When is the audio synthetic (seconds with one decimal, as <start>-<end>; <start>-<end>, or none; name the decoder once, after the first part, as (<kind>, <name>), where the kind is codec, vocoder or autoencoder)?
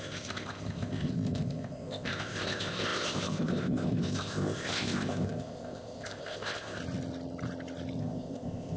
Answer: 0.0-6.8 (codec, ZipCodec); 8.0-8.8